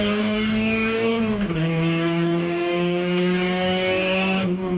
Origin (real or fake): fake